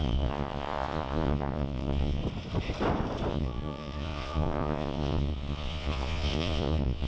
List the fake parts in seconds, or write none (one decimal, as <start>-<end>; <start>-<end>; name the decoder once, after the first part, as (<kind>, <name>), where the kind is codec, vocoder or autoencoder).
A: 0.0-2.2 (vocoder, Vocos); 3.3-7.1